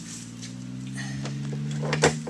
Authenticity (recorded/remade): recorded